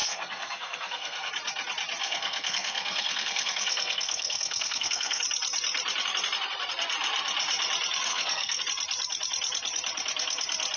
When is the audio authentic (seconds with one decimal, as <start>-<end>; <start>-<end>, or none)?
1.3-2.0; 5.2-8.1; 8.6-10.8